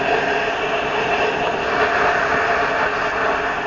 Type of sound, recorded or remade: recorded